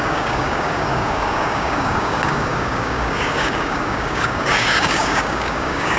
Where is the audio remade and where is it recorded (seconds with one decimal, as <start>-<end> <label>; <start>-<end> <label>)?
0.0-6.0 remade